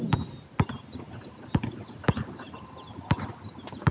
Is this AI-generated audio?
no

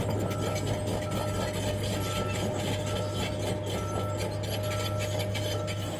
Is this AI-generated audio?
no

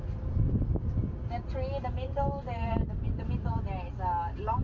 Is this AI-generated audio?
no